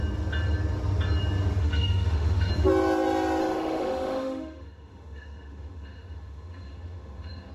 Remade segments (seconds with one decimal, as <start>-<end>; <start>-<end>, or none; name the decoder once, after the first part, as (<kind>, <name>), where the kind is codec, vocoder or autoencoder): 1.6-2.5 (autoencoder, DAC-VAE); 3.4-7.5